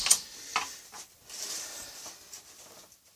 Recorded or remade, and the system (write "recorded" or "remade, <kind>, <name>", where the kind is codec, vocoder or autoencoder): recorded